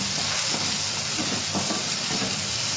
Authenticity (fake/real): real